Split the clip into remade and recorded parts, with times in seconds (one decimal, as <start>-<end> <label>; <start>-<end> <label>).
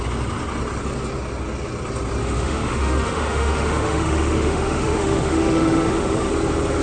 0.0-2.2 recorded; 2.2-6.3 remade; 6.3-6.8 recorded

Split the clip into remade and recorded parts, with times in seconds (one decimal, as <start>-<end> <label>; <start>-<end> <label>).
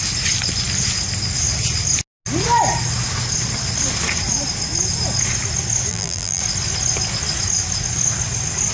0.0-5.9 recorded; 5.9-6.4 remade; 6.4-8.7 recorded